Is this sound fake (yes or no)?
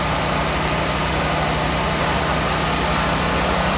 no